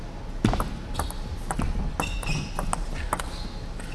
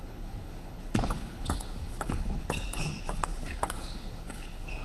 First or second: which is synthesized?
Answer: second